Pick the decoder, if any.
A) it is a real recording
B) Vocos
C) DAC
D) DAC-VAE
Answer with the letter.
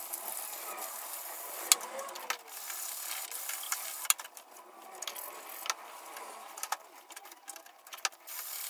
A